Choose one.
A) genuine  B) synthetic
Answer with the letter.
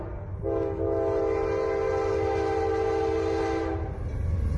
A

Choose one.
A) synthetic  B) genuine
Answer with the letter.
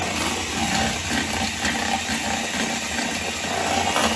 B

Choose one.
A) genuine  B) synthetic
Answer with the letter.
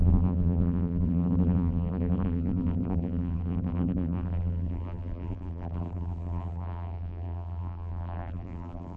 B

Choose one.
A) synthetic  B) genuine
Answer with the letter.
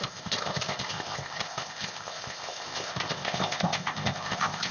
A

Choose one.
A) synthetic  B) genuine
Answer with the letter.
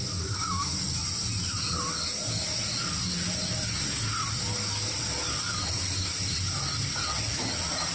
B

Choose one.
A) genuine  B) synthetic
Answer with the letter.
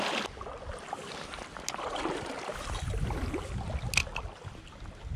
A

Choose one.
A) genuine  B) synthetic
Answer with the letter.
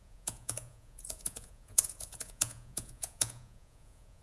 B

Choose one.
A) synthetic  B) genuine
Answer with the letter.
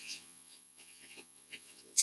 A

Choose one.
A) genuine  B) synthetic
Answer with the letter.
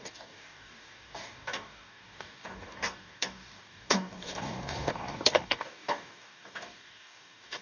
B